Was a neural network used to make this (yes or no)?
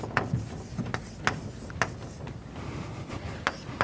no